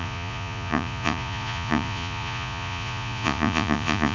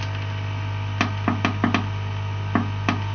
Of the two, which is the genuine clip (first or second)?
second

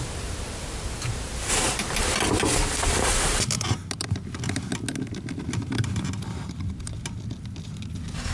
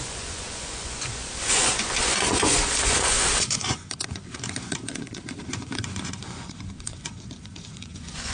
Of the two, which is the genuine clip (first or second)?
first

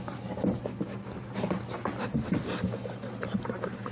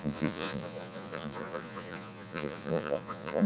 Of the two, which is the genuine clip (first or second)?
first